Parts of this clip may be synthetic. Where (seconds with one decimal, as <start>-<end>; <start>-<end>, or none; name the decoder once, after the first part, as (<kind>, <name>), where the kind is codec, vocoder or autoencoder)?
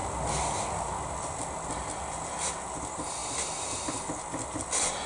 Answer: none